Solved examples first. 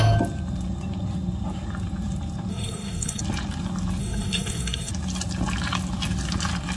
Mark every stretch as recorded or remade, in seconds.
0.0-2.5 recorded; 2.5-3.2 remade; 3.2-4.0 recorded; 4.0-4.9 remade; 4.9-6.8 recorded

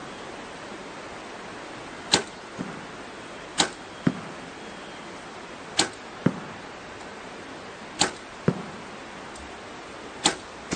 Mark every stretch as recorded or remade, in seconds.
0.0-10.8 recorded